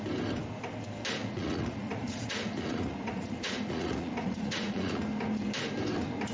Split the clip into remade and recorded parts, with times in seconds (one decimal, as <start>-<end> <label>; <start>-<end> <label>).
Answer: 0.0-1.2 recorded; 1.2-5.0 remade; 5.0-6.3 recorded